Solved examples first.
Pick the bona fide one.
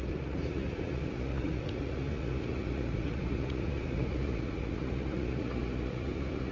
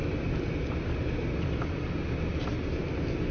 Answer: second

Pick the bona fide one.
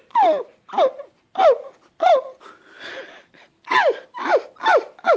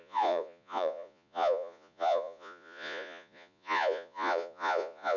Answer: first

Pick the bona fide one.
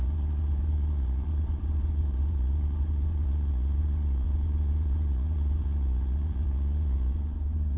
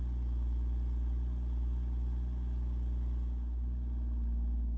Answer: second